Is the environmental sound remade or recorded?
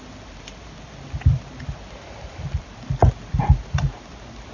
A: recorded